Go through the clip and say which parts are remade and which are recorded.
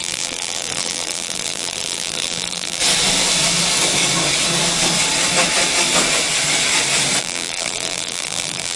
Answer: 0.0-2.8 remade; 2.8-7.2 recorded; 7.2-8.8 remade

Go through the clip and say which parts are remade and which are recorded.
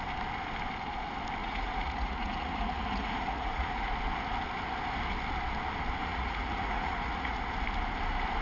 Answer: 0.0-1.4 recorded; 1.4-3.9 remade; 3.9-6.0 recorded; 6.0-7.4 remade; 7.4-8.4 recorded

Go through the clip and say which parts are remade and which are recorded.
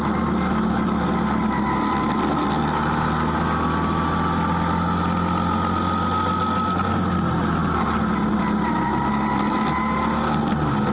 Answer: 0.0-10.9 recorded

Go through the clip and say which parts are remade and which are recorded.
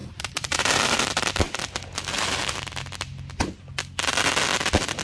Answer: 0.0-1.4 remade; 1.4-5.0 recorded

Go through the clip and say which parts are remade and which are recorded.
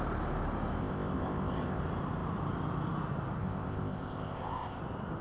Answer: 0.0-0.8 recorded; 0.8-1.8 remade; 1.8-3.4 recorded; 3.4-4.8 remade; 4.8-5.2 recorded